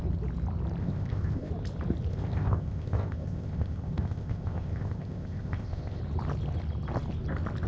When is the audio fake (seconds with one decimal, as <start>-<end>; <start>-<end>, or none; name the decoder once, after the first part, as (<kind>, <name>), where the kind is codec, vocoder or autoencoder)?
0.8-1.5 (codec, ZipCodec); 2.1-6.0